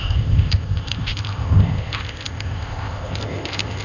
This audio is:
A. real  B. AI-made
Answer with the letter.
B